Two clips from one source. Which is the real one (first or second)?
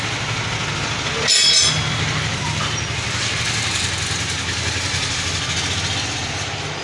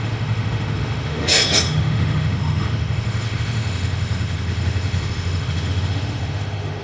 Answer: first